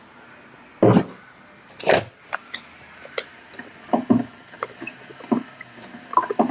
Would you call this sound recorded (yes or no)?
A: yes